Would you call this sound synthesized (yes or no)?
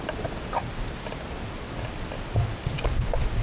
no